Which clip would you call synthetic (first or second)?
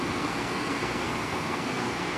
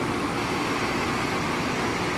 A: first